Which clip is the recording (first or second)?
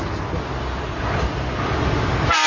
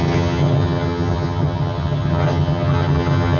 first